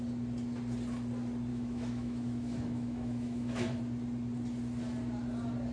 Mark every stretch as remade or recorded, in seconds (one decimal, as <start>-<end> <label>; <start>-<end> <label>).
0.0-1.5 recorded; 1.5-3.8 remade; 3.8-5.7 recorded